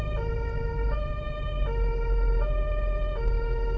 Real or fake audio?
real